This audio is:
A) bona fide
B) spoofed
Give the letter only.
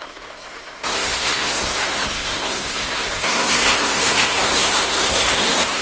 B